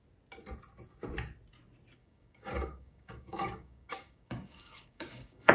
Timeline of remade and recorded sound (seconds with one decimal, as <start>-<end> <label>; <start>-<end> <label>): 0.0-2.0 recorded; 2.0-5.5 remade